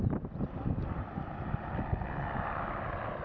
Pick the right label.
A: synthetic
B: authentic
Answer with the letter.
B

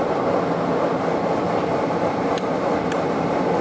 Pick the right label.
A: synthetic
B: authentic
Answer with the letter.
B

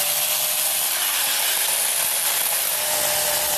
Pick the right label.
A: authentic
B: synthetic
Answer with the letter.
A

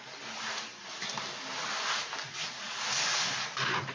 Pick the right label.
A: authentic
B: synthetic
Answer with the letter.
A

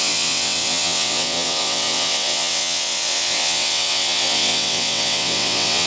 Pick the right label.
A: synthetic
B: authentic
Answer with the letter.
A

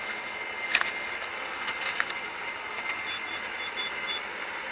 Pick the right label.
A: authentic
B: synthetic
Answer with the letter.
A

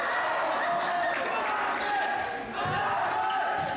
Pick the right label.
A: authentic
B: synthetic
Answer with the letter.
A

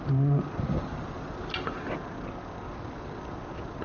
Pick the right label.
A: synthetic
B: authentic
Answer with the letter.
B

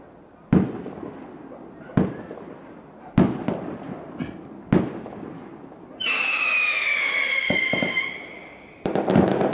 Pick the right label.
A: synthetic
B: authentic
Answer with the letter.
B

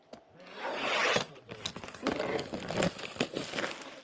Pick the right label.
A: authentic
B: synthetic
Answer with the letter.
A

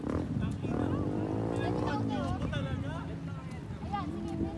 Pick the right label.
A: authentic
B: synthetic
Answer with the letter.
A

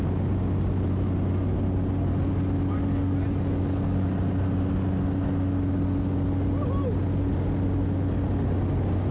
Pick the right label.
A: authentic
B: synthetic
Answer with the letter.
A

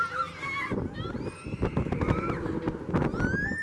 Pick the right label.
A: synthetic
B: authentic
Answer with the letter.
B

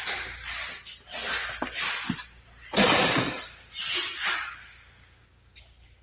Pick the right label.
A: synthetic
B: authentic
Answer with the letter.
B